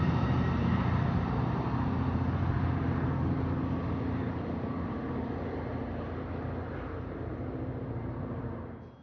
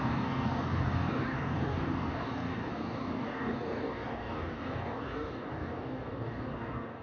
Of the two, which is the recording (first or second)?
first